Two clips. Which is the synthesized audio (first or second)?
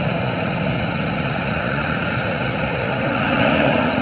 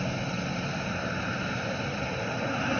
first